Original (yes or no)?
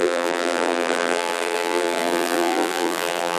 no